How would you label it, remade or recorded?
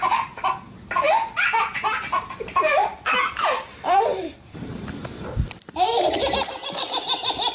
remade